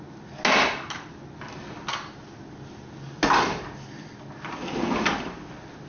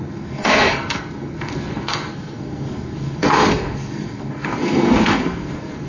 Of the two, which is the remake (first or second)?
second